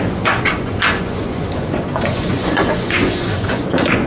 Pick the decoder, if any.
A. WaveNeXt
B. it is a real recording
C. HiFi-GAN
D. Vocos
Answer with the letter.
D